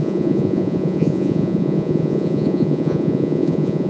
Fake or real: fake